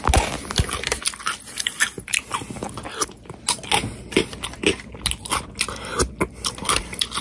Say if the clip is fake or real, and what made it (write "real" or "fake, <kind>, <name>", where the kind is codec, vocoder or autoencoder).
real